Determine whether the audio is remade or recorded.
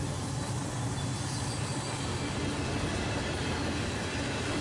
recorded